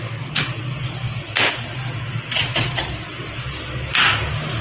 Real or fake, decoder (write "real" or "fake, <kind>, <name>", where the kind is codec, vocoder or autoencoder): real